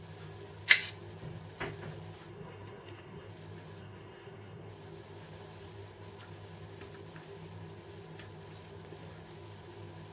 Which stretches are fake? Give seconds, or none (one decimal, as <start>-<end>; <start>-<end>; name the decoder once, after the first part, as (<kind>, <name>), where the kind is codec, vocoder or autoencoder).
2.3-3.3 (codec, SNAC); 3.8-4.7